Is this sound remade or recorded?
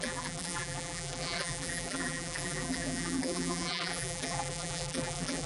remade